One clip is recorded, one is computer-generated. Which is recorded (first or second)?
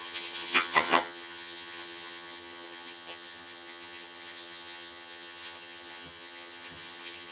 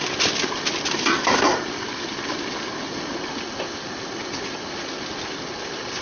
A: second